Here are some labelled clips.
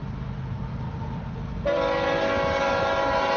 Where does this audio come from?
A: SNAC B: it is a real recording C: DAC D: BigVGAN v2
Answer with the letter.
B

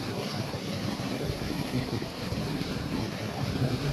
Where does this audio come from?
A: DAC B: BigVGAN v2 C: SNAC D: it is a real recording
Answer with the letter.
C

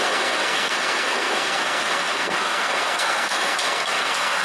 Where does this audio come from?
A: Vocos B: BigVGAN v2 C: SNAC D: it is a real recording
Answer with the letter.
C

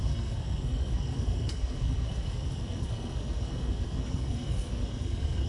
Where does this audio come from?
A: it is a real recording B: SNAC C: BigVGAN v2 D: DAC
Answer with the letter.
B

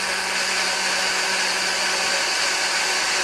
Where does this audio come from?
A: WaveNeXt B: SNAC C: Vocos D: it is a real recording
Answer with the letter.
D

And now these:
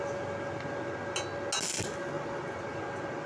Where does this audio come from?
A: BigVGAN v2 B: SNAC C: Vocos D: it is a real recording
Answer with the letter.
D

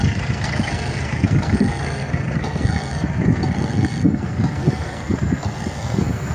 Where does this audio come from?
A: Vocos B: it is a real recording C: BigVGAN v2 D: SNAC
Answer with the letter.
D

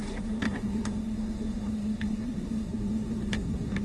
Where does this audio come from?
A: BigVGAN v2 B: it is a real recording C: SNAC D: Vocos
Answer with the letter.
C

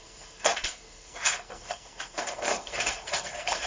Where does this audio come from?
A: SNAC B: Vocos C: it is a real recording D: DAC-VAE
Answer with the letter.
A